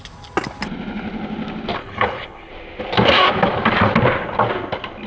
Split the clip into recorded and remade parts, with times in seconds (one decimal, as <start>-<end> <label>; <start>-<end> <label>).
0.0-1.8 recorded; 1.8-2.5 remade; 2.5-5.1 recorded